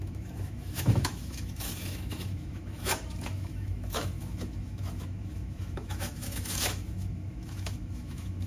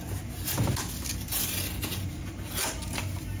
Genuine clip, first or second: second